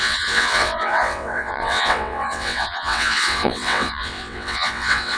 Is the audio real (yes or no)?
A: no